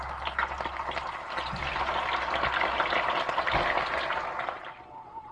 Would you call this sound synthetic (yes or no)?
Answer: no